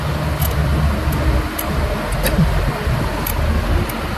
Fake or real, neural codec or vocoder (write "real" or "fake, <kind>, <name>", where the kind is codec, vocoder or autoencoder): real